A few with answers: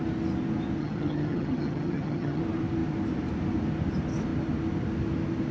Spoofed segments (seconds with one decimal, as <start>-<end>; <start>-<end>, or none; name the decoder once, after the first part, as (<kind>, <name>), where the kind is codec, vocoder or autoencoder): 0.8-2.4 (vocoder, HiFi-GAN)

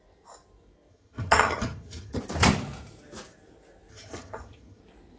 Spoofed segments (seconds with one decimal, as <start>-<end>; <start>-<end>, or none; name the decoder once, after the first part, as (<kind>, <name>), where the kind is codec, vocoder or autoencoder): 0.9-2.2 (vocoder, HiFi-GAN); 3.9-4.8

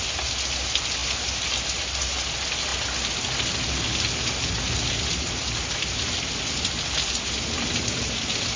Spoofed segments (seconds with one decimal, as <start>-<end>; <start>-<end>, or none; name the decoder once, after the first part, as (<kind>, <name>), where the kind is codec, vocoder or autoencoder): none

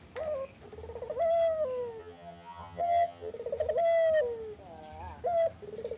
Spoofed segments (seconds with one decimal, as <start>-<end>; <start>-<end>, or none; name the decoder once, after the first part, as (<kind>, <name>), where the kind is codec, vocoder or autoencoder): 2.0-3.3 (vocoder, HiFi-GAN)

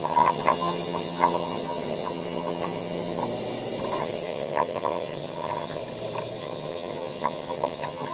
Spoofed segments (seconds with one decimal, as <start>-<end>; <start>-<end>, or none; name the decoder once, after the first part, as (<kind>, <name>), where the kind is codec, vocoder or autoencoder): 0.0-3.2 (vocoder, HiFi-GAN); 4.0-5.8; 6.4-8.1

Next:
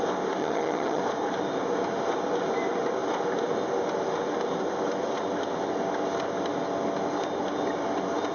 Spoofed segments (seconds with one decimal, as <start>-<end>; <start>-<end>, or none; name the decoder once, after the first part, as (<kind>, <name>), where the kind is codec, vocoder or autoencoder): 0.4-1.0 (vocoder, HiFi-GAN)